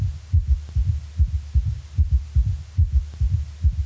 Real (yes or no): yes